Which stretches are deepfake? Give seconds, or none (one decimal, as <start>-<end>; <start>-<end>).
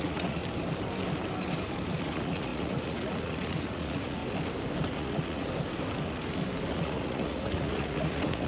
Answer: 0.0-0.4; 2.0-4.2; 4.9-5.5; 6.7-8.5